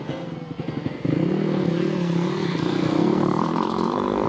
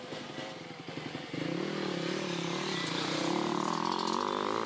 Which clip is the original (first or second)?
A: second